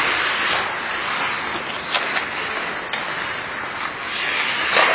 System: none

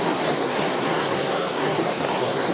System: codec, SNAC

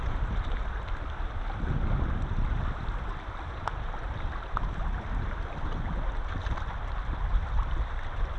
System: none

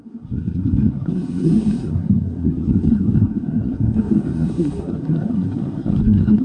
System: codec, SNAC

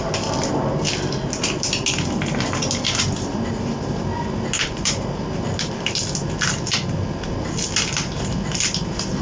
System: none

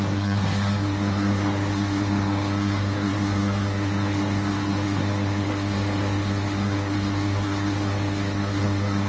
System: codec, SNAC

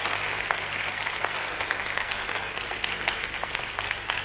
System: codec, SNAC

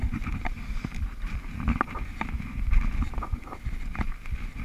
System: none